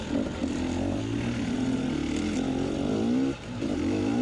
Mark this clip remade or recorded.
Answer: recorded